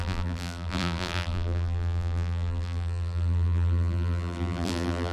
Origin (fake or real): fake